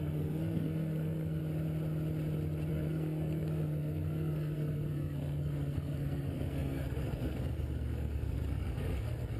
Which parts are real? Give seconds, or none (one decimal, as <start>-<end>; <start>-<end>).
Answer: 1.4-2.7